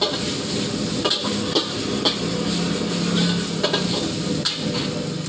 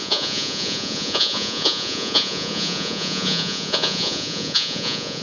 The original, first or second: first